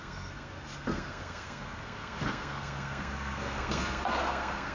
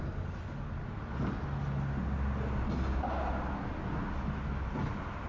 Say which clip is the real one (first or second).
second